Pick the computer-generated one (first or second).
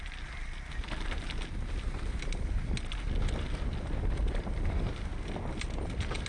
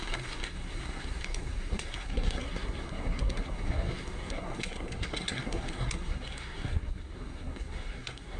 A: second